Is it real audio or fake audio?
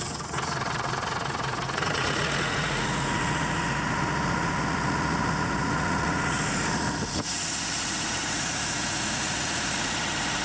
fake